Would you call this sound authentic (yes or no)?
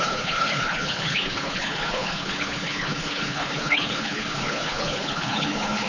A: no